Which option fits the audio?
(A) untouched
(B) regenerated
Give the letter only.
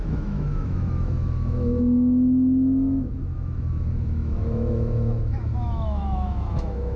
B